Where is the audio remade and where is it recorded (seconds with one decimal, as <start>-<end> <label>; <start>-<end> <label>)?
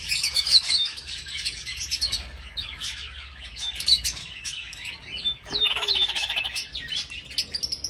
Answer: 0.0-6.6 remade; 6.6-7.9 recorded